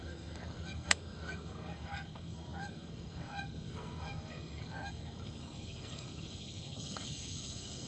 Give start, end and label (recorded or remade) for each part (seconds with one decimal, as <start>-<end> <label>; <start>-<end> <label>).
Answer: 0.0-7.9 remade